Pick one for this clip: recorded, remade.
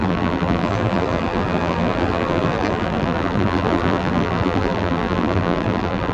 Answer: remade